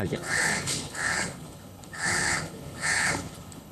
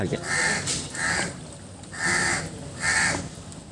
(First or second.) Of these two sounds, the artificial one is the first